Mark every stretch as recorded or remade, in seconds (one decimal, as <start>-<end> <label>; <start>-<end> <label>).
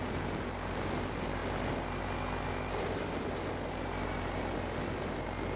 0.0-5.6 recorded